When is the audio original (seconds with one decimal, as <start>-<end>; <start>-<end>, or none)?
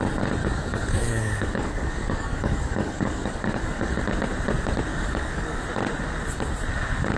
0.0-0.4; 4.0-4.9; 5.6-7.2